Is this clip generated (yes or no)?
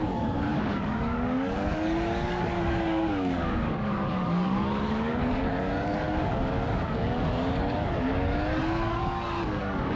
yes